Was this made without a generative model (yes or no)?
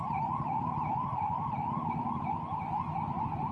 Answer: yes